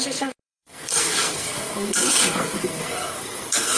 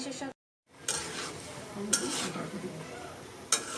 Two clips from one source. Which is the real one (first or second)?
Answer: second